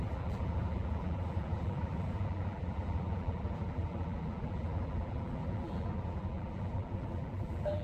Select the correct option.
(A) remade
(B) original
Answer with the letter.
A